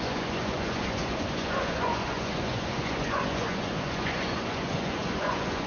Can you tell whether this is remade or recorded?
remade